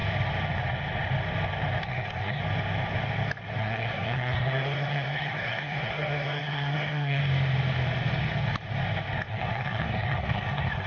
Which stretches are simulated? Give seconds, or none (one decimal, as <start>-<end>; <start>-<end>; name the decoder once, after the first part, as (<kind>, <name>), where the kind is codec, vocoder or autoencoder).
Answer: 1.8-2.4 (codec, SNAC); 3.6-7.2; 9.3-10.9